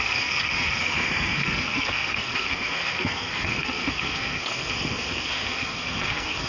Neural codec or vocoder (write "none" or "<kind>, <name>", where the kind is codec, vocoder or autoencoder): codec, SNAC